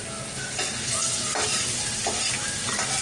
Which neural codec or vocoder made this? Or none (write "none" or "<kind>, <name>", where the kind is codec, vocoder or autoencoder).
none